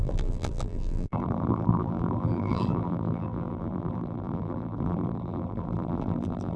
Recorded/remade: remade